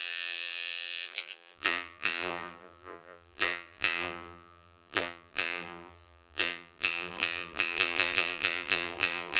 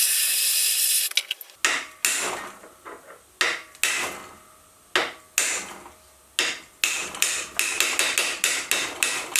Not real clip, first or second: first